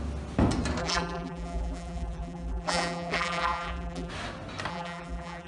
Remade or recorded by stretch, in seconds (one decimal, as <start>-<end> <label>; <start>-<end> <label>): 0.0-0.8 recorded; 0.8-4.1 remade; 4.1-4.7 recorded; 4.7-5.5 remade